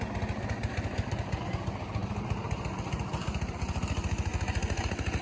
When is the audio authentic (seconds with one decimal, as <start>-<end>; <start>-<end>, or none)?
0.0-5.2